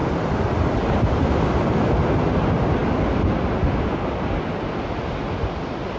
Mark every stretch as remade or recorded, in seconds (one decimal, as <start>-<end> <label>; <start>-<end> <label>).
0.0-6.0 recorded